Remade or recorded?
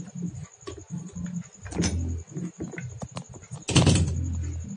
recorded